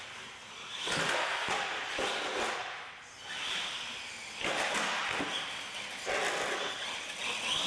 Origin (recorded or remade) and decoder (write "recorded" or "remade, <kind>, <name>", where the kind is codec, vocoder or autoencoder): recorded